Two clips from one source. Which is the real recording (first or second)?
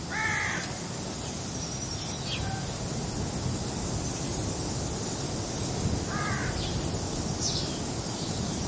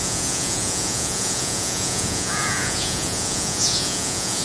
first